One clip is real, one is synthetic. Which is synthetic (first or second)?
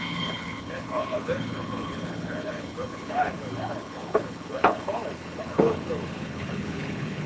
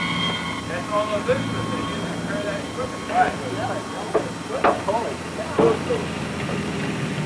first